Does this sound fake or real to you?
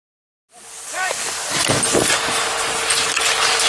real